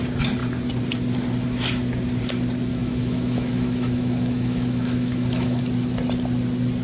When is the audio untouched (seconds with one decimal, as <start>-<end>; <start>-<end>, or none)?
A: 0.0-2.7; 5.6-6.8